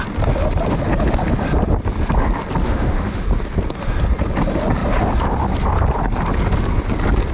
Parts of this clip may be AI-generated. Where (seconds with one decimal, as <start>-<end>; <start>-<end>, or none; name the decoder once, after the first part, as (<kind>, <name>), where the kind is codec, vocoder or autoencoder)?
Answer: 2.6-3.2 (autoencoder, DAC-VAE)

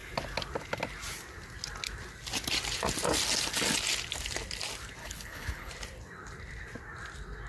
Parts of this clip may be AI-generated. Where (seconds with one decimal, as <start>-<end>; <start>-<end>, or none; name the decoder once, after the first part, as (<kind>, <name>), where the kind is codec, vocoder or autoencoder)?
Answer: 5.0-5.7 (codec, HILCodec)

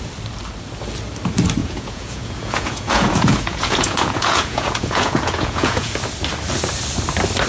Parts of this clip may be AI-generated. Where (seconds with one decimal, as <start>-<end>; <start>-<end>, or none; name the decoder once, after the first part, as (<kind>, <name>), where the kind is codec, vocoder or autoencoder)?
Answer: 1.6-5.9 (vocoder, Vocos)

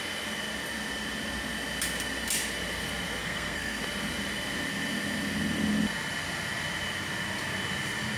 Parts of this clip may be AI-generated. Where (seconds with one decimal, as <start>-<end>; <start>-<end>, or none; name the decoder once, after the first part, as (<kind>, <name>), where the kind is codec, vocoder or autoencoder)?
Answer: 3.2-3.8 (codec, SNAC)